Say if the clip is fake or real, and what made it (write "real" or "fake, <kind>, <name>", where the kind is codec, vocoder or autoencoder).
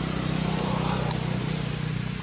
real